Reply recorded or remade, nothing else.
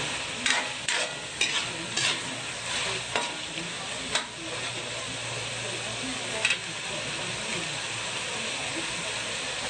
recorded